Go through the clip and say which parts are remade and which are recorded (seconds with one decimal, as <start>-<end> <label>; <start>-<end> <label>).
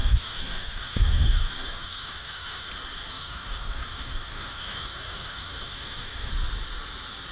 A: 0.0-2.7 remade; 2.7-3.1 recorded; 3.1-6.3 remade; 6.3-7.3 recorded